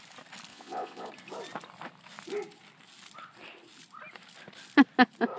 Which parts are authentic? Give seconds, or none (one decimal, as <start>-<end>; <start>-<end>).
0.0-0.5; 1.1-5.4